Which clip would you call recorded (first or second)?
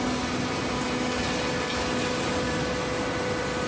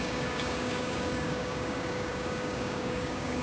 first